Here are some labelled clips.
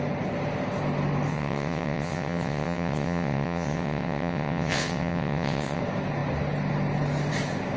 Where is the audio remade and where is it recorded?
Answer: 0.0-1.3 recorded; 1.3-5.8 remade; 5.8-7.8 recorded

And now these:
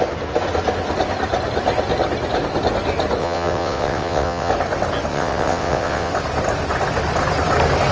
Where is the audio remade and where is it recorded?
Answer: 0.0-3.2 recorded; 3.2-4.5 remade; 4.5-5.1 recorded; 5.1-6.1 remade; 6.1-7.9 recorded

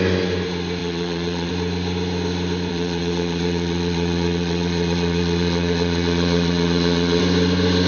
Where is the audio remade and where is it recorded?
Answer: 0.0-0.8 recorded; 0.8-1.5 remade; 1.5-2.7 recorded; 2.7-7.2 remade; 7.2-7.9 recorded

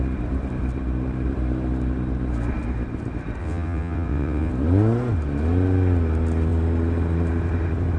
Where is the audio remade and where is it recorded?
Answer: 0.0-3.4 recorded; 3.4-4.5 remade; 4.5-8.0 recorded

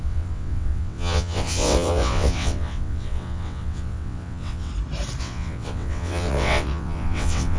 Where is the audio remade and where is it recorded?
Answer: 0.0-4.7 remade; 4.7-5.2 recorded; 5.2-7.6 remade

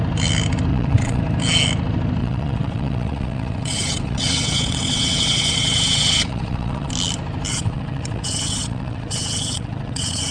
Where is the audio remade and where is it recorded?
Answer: 0.0-0.7 recorded; 0.7-1.2 remade; 1.2-2.2 recorded; 2.2-6.9 remade; 6.9-7.5 recorded; 7.5-10.3 remade